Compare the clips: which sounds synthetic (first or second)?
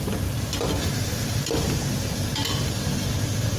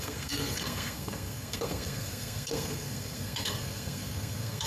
second